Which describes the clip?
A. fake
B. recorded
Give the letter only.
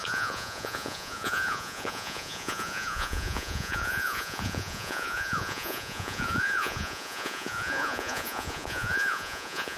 A